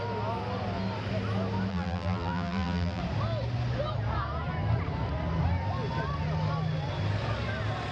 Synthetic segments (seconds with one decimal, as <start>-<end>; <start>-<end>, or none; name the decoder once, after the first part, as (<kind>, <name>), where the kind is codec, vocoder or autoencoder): 1.7-3.0 (vocoder, BigVGAN v2)